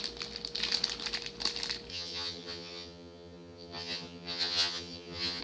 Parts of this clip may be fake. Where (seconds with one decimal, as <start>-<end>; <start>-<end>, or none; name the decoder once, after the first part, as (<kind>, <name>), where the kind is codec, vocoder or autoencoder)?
1.9-5.4 (vocoder, HiFi-GAN)